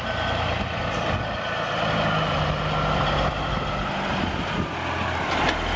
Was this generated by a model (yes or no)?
no